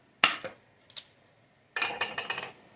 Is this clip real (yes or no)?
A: yes